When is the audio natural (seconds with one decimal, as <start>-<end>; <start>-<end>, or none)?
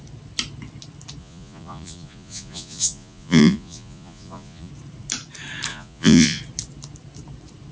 0.0-1.2; 4.7-5.7; 6.4-7.7